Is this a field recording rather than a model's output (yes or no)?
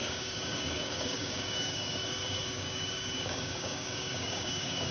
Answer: no